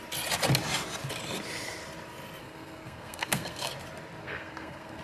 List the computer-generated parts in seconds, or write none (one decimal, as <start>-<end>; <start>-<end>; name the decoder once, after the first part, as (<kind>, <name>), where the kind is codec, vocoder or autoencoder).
2.4-3.7 (codec, SNAC); 4.2-5.0